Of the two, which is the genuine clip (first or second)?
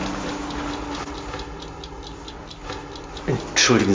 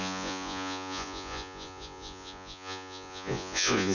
first